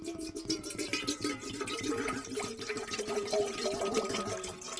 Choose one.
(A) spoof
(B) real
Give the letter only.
B